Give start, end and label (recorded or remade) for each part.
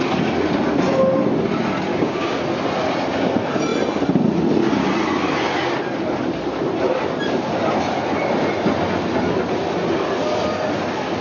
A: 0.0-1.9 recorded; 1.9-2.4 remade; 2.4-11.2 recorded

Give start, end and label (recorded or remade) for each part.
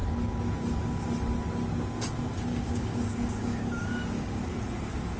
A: 0.0-2.5 recorded; 2.5-4.4 remade; 4.4-5.2 recorded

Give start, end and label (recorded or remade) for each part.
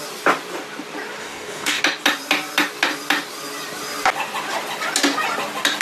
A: 0.0-1.2 recorded; 1.2-1.8 remade; 1.8-5.8 recorded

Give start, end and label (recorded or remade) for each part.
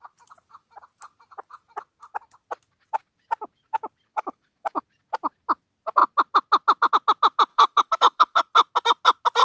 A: 0.0-4.1 recorded; 4.1-4.8 remade; 4.8-7.5 recorded; 7.5-8.4 remade; 8.4-9.4 recorded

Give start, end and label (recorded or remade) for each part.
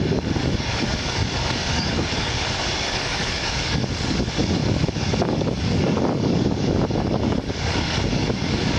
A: 0.0-8.8 remade